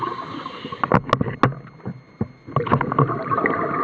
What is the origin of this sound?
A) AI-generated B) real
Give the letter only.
B